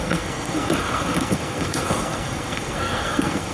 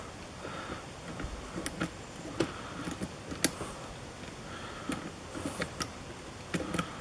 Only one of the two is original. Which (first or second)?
second